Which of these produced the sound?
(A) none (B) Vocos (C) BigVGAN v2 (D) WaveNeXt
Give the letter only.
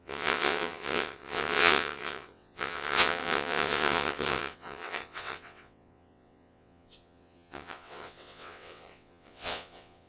D